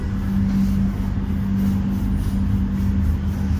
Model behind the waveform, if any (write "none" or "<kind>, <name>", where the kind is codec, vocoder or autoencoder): none